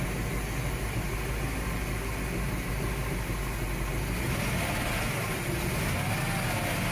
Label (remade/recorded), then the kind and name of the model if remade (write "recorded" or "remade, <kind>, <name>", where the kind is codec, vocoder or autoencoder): recorded